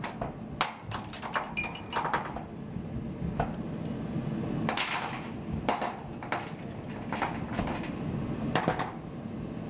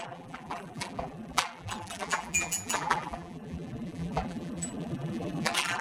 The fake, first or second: second